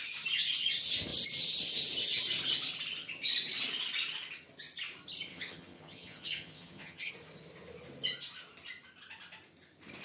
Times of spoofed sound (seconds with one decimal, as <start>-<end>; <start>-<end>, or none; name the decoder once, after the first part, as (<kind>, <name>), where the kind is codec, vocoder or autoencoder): 5.3-7.1 (vocoder, HiFi-GAN)